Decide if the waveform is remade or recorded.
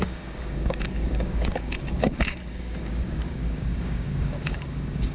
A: remade